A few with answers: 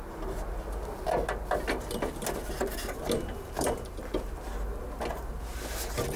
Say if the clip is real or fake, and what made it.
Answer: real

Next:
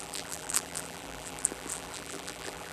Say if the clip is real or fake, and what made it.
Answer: fake, vocoder, BigVGAN v2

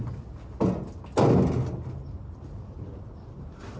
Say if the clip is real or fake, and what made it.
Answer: real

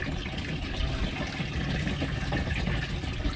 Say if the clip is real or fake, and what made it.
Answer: real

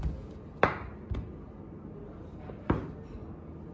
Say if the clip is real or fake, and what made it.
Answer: real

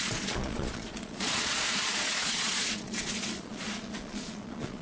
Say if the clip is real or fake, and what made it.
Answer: fake, vocoder, Vocos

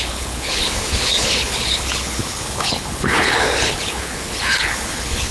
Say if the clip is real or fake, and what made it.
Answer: fake, codec, HILCodec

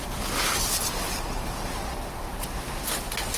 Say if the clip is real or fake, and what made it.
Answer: real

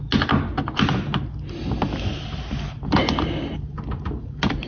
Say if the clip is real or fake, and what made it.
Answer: real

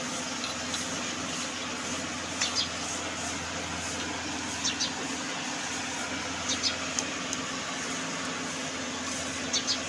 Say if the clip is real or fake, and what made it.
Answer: real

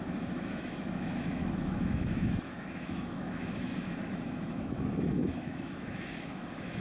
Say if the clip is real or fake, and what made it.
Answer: fake, autoencoder, DAC-VAE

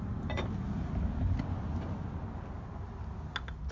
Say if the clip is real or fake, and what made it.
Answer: real